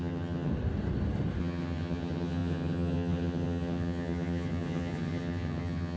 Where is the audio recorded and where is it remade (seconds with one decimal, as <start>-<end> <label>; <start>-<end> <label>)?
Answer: 0.0-0.5 remade; 0.5-1.4 recorded; 1.4-6.0 remade